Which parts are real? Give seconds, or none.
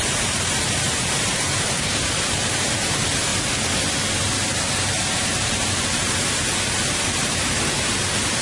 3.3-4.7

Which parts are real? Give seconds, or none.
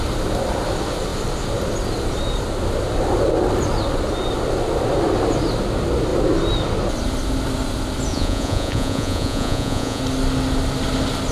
0.0-8.1; 10.0-11.3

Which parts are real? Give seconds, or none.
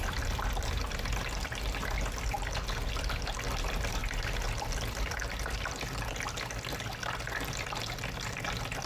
0.0-8.9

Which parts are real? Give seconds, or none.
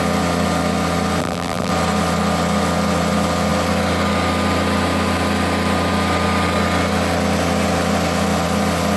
0.0-1.2; 1.7-9.0